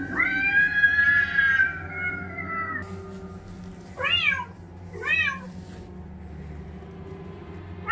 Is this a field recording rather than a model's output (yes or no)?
yes